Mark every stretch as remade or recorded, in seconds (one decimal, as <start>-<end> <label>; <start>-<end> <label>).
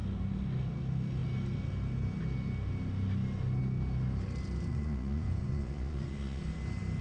0.0-4.7 recorded; 4.7-6.4 remade; 6.4-7.0 recorded